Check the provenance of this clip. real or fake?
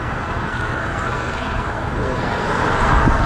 fake